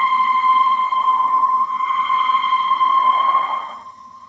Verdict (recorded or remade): remade